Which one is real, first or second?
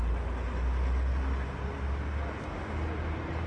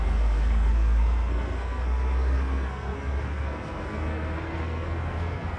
first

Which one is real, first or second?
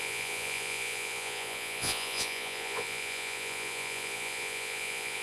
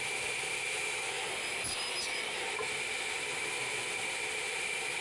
second